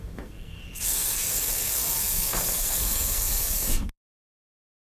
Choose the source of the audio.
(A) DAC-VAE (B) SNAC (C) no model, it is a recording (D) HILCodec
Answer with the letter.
B